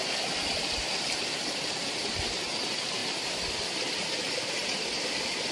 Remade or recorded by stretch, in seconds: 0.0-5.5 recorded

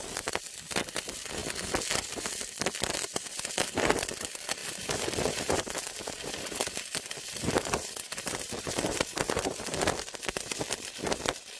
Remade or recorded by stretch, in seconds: 0.0-1.4 remade; 1.4-1.9 recorded; 1.9-11.6 remade

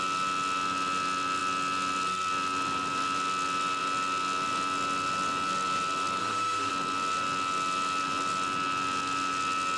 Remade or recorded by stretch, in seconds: 0.0-6.2 recorded; 6.2-6.7 remade; 6.7-9.8 recorded

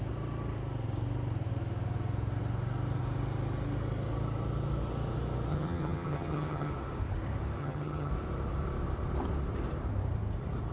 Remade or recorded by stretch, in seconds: 0.0-5.5 recorded; 5.5-6.7 remade; 6.7-7.6 recorded; 7.6-8.1 remade; 8.1-10.7 recorded

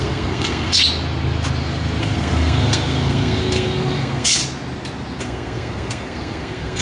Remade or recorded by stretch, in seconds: 0.0-0.8 remade; 0.8-2.0 recorded; 2.0-4.4 remade; 4.4-5.2 recorded; 5.2-6.8 remade

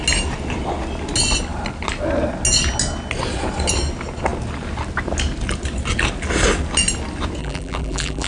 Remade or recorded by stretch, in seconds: 0.0-7.4 recorded; 7.4-8.3 remade

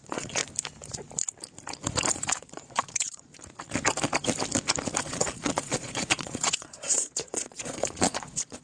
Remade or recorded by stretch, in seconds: 0.0-0.4 remade; 0.4-2.1 recorded; 2.1-3.3 remade; 3.3-5.0 recorded; 5.0-8.6 remade